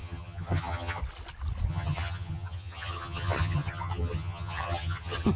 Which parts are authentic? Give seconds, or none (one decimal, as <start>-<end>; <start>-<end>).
1.0-1.7